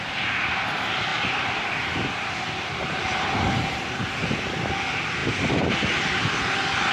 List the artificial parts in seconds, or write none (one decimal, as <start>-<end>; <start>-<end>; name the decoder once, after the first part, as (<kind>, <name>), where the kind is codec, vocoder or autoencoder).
1.1-2.9 (vocoder, BigVGAN v2); 5.2-6.9